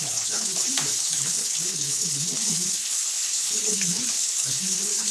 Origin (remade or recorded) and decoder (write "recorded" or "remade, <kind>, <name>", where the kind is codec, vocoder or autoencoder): remade, codec, HILCodec